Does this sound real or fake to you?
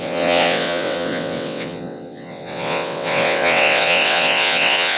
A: fake